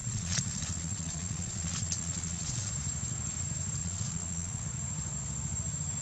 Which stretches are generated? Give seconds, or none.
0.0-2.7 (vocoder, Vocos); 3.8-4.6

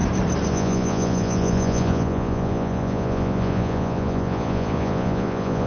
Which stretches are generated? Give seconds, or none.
0.5-5.7 (vocoder, Vocos)

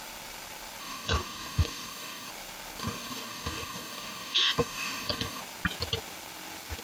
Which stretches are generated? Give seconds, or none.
0.8-2.3 (codec, DAC); 2.8-5.4

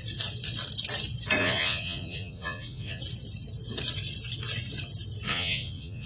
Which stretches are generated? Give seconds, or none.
1.4-3.0 (vocoder, Vocos); 5.3-6.1

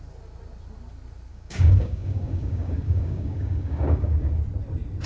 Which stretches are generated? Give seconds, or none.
1.3-4.3 (codec, DAC)